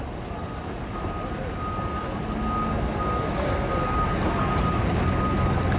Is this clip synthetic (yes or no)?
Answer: no